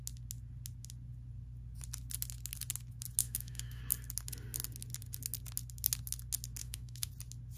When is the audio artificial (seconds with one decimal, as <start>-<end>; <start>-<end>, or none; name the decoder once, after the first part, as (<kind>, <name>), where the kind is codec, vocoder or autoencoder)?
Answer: 3.2-3.8 (autoencoder, DAC-VAE); 6.6-7.1